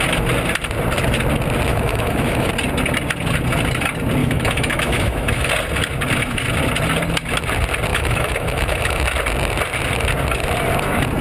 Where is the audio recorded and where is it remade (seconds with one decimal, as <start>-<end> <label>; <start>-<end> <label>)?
0.0-1.7 recorded; 1.7-2.5 remade; 2.5-4.2 recorded; 4.2-5.5 remade; 5.5-7.9 recorded; 7.9-9.0 remade; 9.0-11.2 recorded